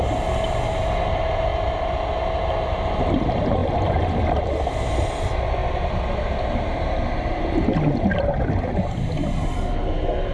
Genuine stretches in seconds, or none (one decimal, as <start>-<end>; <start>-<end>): 0.0-10.3

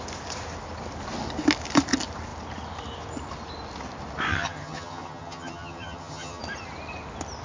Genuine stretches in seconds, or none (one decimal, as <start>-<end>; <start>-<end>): 0.0-4.3; 6.4-7.4

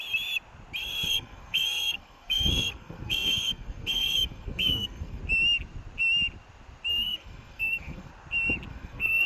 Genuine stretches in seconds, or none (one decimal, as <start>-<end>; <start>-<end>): 0.0-0.8; 5.2-6.9; 8.1-8.7

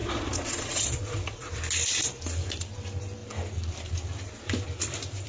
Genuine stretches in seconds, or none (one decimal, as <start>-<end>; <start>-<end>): 1.6-5.3

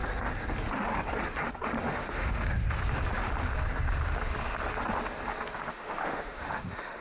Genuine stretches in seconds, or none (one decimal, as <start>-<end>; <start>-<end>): 0.0-1.8; 2.8-5.7